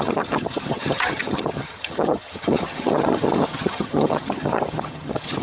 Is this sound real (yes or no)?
no